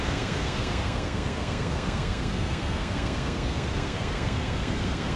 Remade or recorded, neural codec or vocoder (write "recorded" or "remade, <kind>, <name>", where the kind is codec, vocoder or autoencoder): remade, codec, SNAC